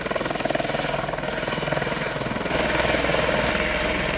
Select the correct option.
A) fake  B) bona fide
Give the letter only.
B